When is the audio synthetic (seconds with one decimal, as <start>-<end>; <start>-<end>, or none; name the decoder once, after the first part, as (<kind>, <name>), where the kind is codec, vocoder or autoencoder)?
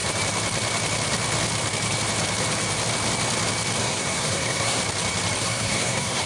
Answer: 3.8-4.8 (codec, SNAC); 5.4-6.3